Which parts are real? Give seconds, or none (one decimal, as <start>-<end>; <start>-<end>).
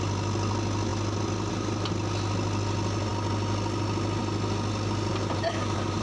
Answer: 0.0-5.1